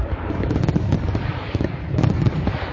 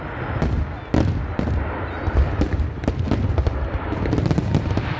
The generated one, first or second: first